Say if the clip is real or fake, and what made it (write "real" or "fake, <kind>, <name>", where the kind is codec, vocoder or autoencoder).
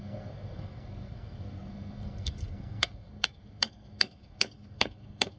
fake, codec, SNAC